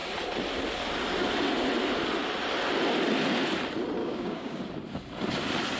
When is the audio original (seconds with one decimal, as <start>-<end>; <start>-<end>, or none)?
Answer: 0.0-4.0; 4.6-5.8